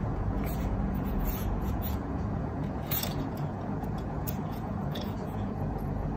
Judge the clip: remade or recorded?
remade